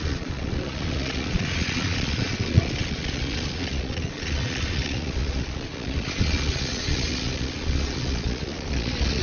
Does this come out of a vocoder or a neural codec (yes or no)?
yes